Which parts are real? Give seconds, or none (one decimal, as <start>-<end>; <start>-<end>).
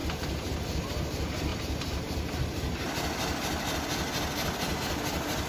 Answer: 0.8-5.5